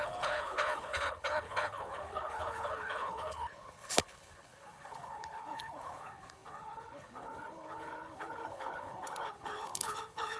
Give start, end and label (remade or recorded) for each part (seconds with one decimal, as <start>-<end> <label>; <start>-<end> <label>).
0.0-10.4 remade